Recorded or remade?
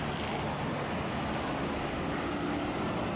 recorded